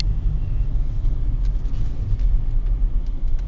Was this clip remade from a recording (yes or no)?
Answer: no